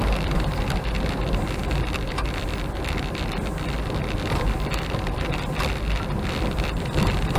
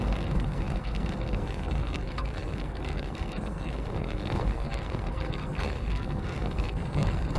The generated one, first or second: second